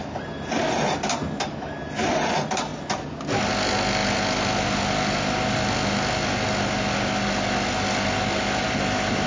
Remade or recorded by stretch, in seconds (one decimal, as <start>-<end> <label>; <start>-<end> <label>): 0.0-9.3 recorded